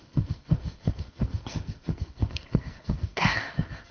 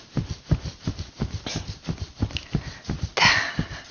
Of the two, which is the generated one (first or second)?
first